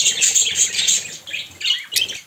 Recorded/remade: recorded